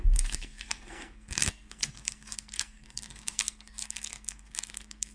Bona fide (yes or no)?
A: no